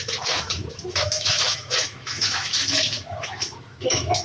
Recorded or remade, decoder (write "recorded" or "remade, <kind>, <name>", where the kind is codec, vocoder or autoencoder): remade, autoencoder, DAC-VAE